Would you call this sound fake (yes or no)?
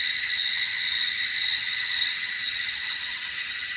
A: yes